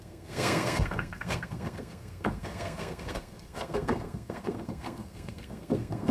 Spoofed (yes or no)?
yes